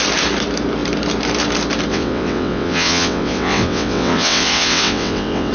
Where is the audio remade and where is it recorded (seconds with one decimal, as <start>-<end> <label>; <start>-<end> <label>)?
0.0-1.9 recorded; 1.9-5.5 remade